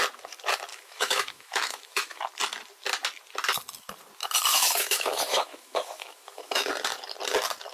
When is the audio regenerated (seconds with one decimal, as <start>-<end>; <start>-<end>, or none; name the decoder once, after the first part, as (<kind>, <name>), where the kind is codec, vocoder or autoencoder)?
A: 0.7-2.2 (autoencoder, DAC-VAE); 4.5-6.7